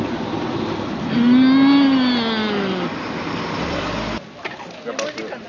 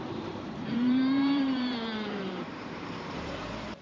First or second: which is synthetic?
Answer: second